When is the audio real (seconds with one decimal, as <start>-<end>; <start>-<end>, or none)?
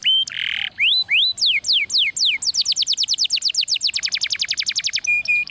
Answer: 0.0-5.5